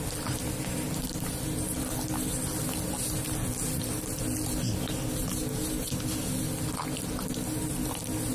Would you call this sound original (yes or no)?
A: yes